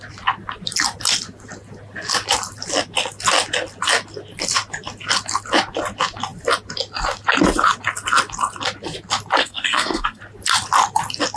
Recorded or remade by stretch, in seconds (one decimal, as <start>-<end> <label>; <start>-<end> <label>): 0.0-9.4 recorded; 9.4-10.2 remade; 10.2-11.4 recorded